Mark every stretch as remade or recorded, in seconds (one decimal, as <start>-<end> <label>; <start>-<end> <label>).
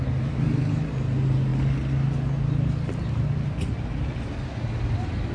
0.0-5.3 recorded